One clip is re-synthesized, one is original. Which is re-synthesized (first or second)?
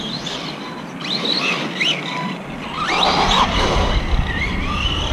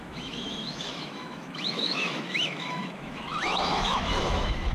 second